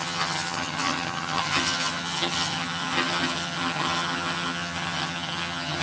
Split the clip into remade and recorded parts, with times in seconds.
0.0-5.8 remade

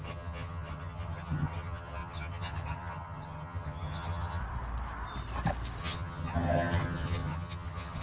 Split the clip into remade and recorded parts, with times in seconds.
0.0-4.4 remade; 4.4-5.8 recorded; 5.8-8.0 remade

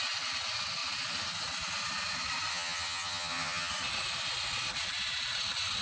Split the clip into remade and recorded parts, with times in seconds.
0.0-2.5 recorded; 2.5-3.7 remade; 3.7-5.8 recorded

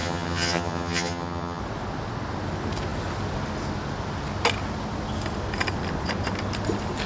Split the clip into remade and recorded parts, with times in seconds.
0.0-1.6 remade; 1.6-7.1 recorded